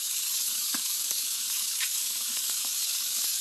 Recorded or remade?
remade